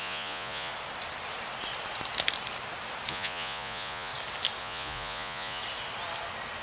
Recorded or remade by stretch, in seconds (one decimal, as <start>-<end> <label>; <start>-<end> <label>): 0.0-0.7 remade; 0.7-3.1 recorded; 3.1-4.1 remade; 4.1-4.6 recorded; 4.6-5.6 remade; 5.6-6.6 recorded